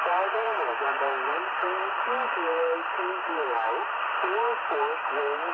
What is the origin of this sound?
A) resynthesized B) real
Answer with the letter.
B